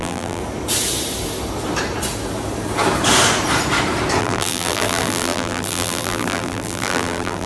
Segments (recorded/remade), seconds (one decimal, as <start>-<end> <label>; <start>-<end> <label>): 0.0-0.4 remade; 0.4-4.2 recorded; 4.2-7.5 remade